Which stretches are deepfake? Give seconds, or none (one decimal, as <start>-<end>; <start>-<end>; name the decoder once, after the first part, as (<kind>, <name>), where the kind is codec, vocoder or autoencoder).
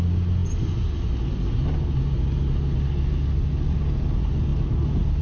none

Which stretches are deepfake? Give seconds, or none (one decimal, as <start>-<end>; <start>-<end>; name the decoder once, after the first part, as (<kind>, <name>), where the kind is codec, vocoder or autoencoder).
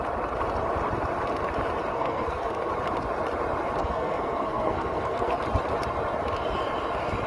1.9-2.7 (codec, SNAC); 3.8-5.4